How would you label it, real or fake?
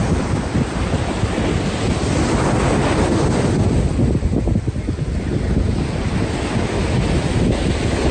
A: real